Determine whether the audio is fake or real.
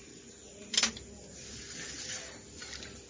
real